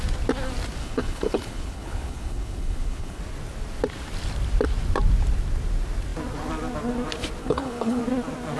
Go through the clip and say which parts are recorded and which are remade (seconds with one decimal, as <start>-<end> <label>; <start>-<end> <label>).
0.0-0.8 recorded; 0.8-3.2 remade; 3.2-7.4 recorded; 7.4-8.0 remade; 8.0-8.6 recorded